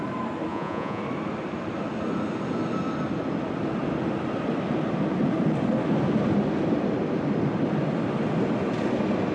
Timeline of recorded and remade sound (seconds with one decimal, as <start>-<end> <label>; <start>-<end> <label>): 0.0-0.5 recorded; 0.5-1.0 remade; 1.0-9.3 recorded